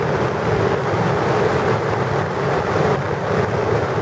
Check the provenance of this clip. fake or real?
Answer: real